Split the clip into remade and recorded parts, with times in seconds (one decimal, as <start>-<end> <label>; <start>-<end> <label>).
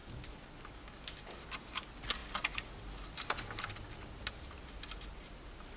0.0-5.8 recorded